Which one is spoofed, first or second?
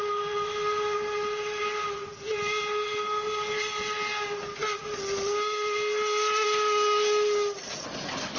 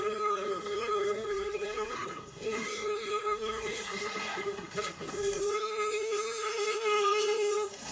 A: second